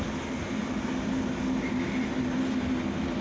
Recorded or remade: recorded